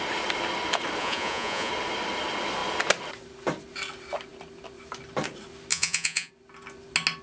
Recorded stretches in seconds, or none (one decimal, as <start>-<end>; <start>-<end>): 0.0-1.0; 1.7-5.7; 6.3-7.2